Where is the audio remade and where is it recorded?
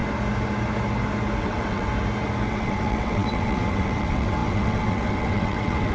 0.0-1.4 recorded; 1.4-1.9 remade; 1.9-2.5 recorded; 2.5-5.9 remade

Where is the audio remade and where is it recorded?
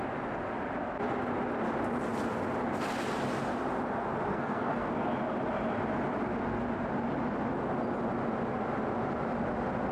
0.0-4.3 recorded; 4.3-4.9 remade; 4.9-9.9 recorded